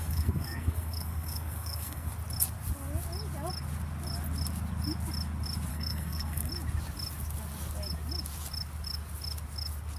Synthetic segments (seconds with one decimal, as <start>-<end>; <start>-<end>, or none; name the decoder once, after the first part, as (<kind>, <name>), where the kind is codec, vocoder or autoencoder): 0.0-2.1 (codec, SNAC); 5.7-6.5